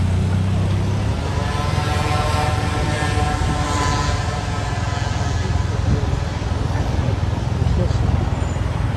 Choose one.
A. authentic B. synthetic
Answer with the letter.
A